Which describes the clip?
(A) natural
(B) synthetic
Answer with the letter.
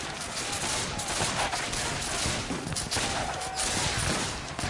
A